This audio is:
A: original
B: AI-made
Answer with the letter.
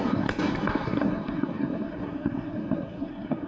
B